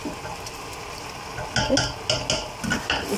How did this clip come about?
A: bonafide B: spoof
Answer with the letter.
A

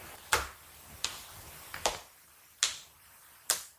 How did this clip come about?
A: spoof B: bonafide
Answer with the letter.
B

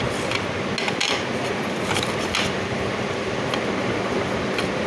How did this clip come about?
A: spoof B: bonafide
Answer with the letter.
B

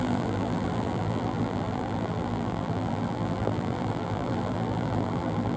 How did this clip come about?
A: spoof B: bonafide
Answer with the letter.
A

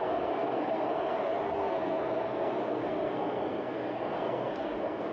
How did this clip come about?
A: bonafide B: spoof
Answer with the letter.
B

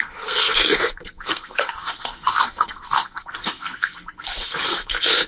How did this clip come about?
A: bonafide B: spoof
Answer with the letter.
B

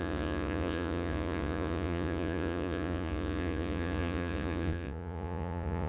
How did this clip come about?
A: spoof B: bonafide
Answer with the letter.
A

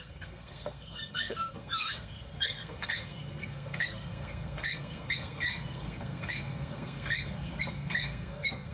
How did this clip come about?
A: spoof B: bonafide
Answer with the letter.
A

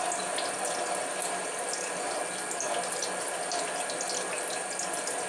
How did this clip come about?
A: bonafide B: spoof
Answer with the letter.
A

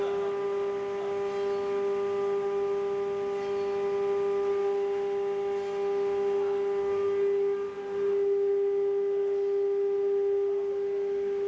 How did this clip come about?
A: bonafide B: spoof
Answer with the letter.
A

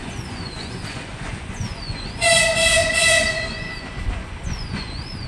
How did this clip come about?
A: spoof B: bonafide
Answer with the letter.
A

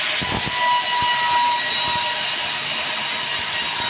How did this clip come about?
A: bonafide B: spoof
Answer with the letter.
A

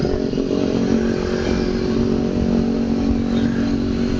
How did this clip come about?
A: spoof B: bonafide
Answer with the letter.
B